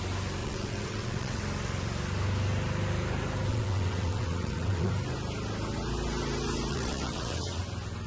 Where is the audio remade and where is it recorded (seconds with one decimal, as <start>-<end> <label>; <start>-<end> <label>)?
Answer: 0.0-0.4 recorded; 0.4-1.4 remade; 1.4-3.5 recorded; 3.5-4.9 remade; 4.9-6.7 recorded; 6.7-7.6 remade; 7.6-8.1 recorded